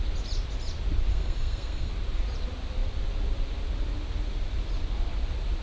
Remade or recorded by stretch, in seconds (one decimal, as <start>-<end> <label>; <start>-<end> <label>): 0.0-1.1 recorded; 1.1-1.9 remade; 1.9-5.6 recorded